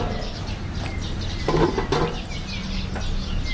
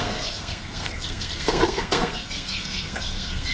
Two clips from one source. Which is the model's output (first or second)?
second